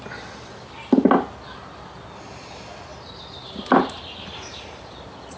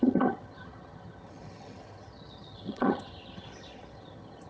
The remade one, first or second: second